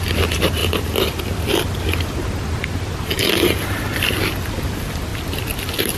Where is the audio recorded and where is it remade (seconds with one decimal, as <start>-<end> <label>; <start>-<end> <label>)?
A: 0.0-0.6 remade; 0.6-4.2 recorded; 4.2-5.1 remade; 5.1-6.0 recorded